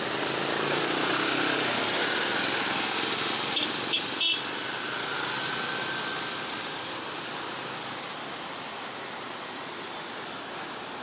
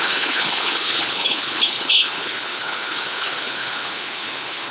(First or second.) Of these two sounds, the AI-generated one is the second